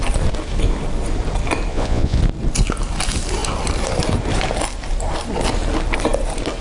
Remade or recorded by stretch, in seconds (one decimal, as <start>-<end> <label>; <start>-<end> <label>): 0.0-1.7 recorded; 1.7-2.2 remade; 2.2-6.6 recorded

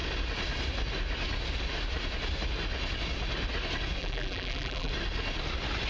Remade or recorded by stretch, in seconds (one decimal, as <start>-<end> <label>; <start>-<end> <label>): 0.0-4.0 recorded; 4.0-4.9 remade; 4.9-5.9 recorded

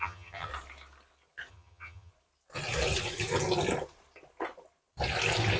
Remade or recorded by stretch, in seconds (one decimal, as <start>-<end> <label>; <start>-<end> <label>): 0.0-0.5 remade; 0.5-1.5 recorded; 1.5-2.1 remade; 2.1-5.6 recorded

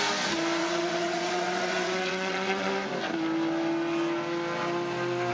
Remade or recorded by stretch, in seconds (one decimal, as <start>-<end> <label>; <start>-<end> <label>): 0.0-0.6 recorded; 0.6-2.7 remade; 2.7-5.3 recorded

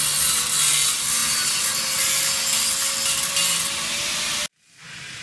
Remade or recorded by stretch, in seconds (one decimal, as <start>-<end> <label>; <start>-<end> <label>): 0.0-5.2 recorded

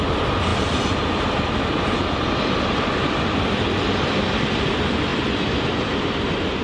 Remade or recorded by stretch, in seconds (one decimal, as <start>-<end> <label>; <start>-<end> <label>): 0.0-6.6 recorded